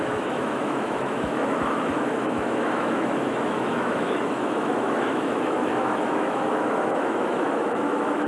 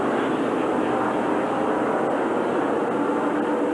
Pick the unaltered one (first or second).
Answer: second